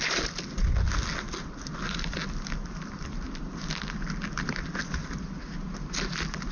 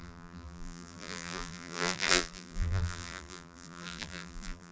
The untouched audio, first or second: first